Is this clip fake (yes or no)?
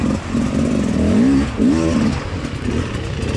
no